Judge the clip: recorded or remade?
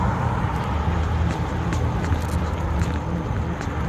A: recorded